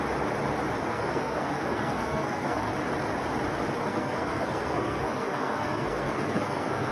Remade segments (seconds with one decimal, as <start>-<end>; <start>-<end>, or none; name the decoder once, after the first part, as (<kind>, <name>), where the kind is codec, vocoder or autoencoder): 0.9-2.7 (codec, SNAC); 3.9-6.9